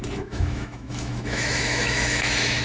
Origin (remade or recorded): remade